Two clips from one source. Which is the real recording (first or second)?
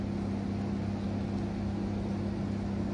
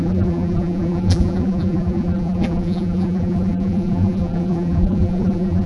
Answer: first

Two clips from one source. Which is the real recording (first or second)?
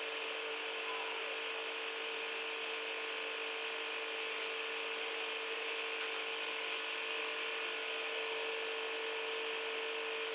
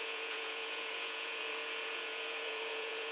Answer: first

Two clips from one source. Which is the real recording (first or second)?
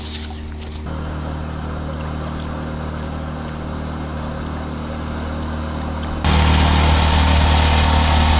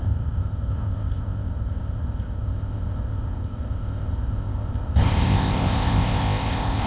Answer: first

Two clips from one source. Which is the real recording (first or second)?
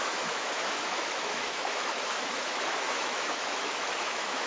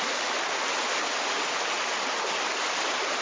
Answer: second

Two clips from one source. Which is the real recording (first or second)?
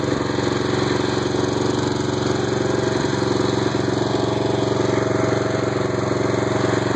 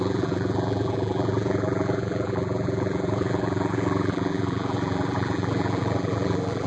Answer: first